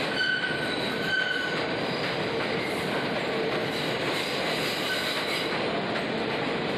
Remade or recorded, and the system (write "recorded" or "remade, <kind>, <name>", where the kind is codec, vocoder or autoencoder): recorded